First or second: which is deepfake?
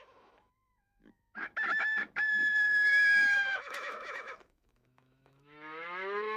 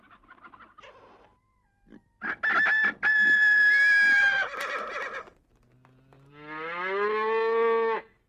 first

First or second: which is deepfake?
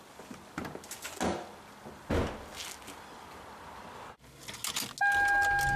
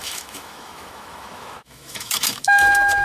second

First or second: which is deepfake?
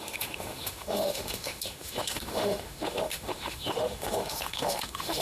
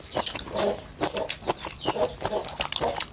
first